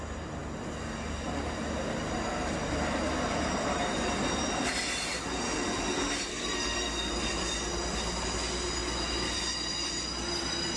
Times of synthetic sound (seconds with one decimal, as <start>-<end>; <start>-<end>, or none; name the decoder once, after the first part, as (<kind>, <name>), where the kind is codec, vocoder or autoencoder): 6.3-7.1 (codec, SNAC)